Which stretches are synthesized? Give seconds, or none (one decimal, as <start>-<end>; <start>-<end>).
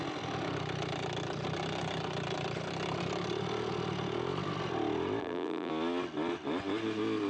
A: 5.2-5.7